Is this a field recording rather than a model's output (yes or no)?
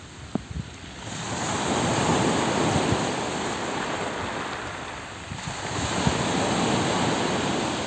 yes